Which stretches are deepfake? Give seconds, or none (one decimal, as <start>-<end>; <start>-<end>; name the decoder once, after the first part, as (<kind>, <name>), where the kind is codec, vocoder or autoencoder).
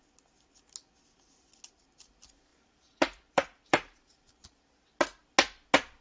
2.5-4.4 (vocoder, BigVGAN v2)